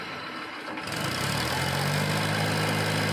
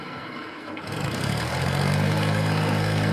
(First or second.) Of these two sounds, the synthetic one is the second